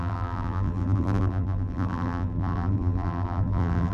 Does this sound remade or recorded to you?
remade